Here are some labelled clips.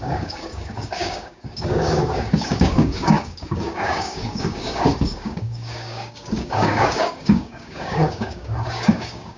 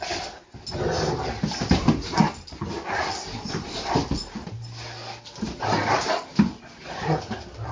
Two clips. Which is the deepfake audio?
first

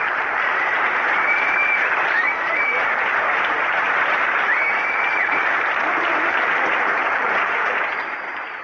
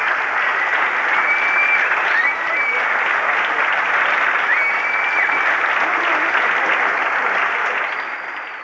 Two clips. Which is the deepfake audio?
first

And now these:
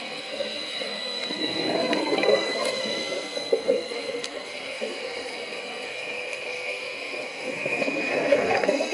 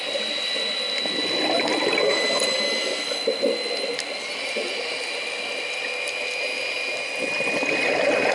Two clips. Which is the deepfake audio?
first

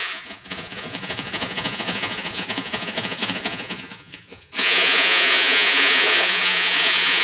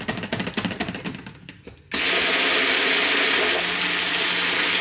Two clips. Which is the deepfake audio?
first